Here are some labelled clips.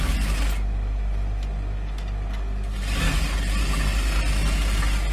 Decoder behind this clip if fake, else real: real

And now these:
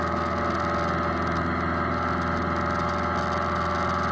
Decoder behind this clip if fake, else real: real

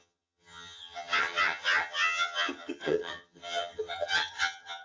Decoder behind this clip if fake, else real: fake, vocoder, HiFi-GAN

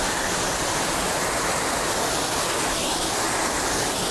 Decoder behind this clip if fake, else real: real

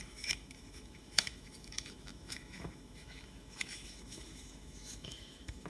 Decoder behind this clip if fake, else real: fake, autoencoder, DAC-VAE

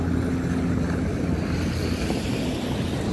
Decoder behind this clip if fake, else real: real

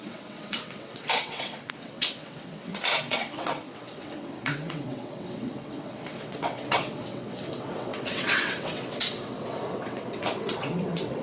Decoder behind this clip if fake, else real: fake, vocoder, WaveNeXt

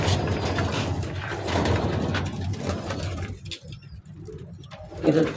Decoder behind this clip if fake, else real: real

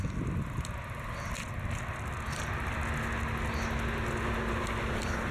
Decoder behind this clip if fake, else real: real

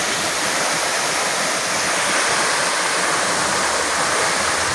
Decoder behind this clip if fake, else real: real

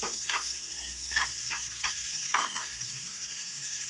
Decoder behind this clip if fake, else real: fake, codec, SNAC